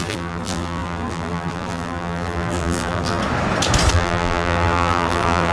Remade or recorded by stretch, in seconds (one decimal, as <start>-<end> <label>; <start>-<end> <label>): 0.0-3.2 remade; 3.2-3.9 recorded; 3.9-5.5 remade